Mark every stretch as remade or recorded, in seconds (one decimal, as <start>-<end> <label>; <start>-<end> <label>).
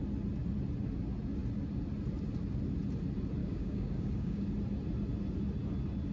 0.0-3.4 recorded; 3.4-4.5 remade; 4.5-6.1 recorded